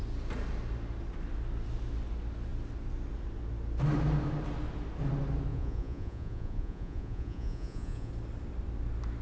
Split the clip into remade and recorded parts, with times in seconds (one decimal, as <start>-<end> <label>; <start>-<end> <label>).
0.0-5.5 recorded; 5.5-8.1 remade; 8.1-9.2 recorded